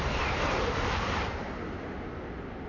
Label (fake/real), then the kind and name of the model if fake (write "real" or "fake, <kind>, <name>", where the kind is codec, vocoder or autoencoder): real